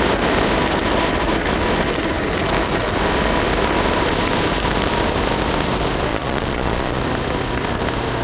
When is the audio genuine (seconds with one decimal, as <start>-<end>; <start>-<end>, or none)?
0.0-6.1; 7.0-8.2